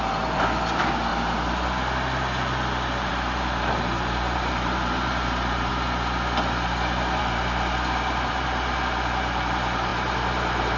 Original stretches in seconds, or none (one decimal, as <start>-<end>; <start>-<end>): 1.1-3.1; 5.7-7.2